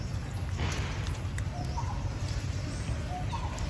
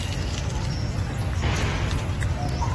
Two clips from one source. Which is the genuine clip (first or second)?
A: second